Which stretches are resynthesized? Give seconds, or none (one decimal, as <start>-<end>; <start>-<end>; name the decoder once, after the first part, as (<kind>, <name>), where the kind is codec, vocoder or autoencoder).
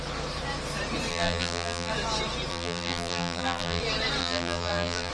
1.1-1.9 (vocoder, BigVGAN v2); 2.5-3.8; 4.2-5.1